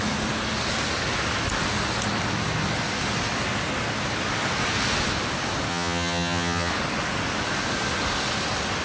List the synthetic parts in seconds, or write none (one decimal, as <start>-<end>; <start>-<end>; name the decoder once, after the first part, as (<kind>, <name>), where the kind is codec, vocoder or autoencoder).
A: 5.7-6.7 (vocoder, HiFi-GAN)